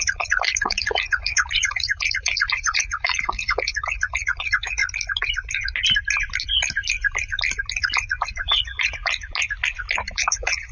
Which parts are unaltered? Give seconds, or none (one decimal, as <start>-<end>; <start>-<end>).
4.8-7.8; 9.3-10.1